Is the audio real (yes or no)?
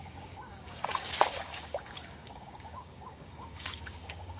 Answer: no